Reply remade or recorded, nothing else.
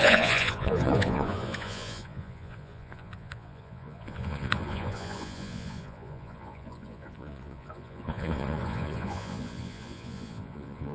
remade